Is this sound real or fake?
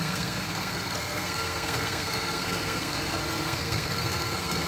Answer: fake